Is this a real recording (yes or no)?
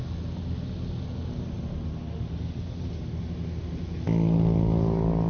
yes